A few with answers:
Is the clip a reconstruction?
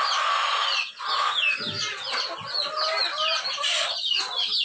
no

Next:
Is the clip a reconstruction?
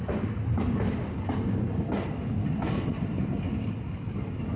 no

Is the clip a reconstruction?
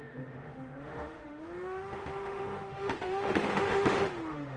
yes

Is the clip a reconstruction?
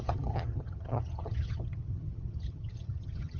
yes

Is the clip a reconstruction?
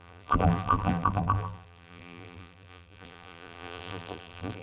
yes